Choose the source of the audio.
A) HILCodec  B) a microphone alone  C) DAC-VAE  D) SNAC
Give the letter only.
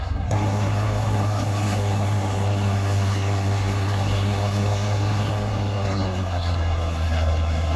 D